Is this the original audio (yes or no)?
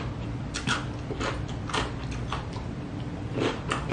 yes